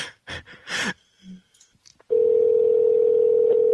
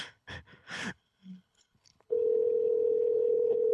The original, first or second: first